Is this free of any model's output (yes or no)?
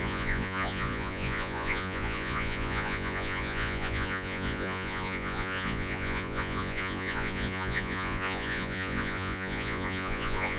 no